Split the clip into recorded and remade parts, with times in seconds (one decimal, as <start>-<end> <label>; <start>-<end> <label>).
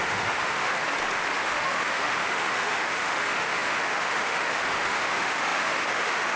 0.0-0.7 remade; 0.7-1.4 recorded; 1.4-6.4 remade